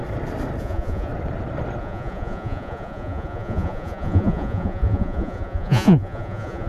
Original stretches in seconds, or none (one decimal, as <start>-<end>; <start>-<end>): 0.0-0.6; 1.1-1.8